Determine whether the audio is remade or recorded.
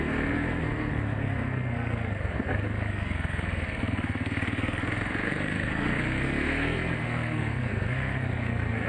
remade